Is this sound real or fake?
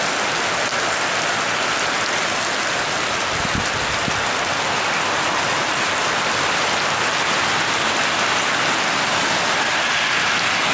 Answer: real